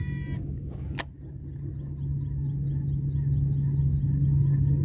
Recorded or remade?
recorded